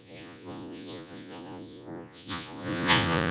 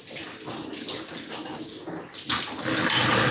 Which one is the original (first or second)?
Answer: second